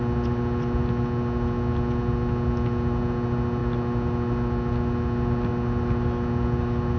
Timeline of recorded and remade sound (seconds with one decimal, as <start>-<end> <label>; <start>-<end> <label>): 0.0-7.0 recorded